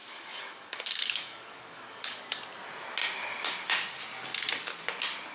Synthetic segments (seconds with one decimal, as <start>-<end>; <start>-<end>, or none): 0.0-2.3